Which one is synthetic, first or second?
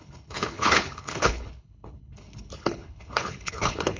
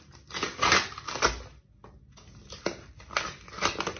first